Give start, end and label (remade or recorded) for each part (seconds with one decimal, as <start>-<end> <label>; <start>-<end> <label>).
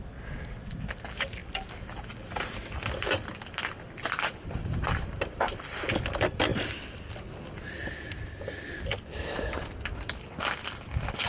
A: 0.0-11.3 recorded